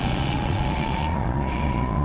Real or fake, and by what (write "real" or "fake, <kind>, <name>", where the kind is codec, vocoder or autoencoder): fake, vocoder, Vocos